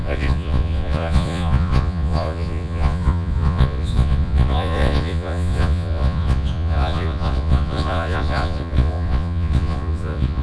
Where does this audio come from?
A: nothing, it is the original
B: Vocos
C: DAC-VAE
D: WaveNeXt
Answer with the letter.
B